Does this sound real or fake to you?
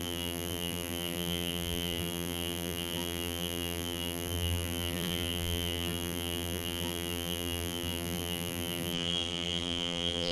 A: fake